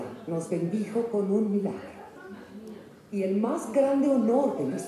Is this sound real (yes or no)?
yes